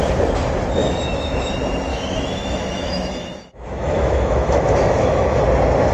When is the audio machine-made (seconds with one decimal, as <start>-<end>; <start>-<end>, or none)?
0.8-1.5; 1.9-5.4